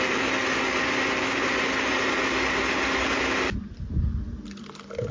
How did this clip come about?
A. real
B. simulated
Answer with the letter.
A